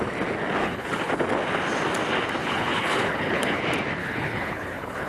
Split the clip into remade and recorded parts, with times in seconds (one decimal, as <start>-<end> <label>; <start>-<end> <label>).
0.0-0.6 recorded; 0.6-1.1 remade; 1.1-2.4 recorded; 2.4-3.6 remade; 3.6-4.0 recorded; 4.0-5.1 remade